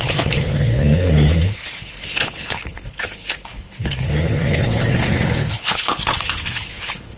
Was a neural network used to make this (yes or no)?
yes